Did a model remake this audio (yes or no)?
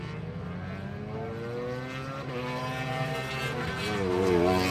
no